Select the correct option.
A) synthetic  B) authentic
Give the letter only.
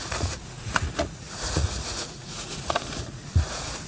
A